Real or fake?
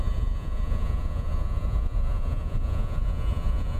fake